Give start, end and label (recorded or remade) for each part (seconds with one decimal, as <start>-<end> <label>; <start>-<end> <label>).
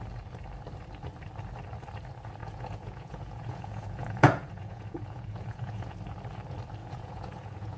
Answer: 0.0-2.4 recorded; 2.4-5.9 remade; 5.9-6.8 recorded; 6.8-7.8 remade